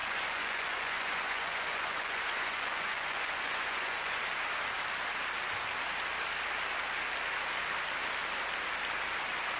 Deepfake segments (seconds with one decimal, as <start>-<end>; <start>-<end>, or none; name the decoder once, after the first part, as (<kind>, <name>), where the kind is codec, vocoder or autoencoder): 0.0-4.2 (vocoder, Vocos)